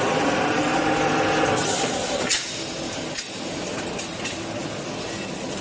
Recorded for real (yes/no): yes